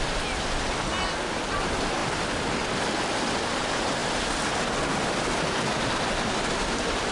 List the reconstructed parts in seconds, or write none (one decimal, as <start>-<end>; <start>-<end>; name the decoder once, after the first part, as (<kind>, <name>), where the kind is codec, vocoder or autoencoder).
none